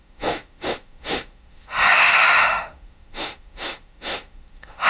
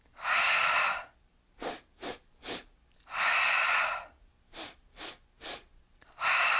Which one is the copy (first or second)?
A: first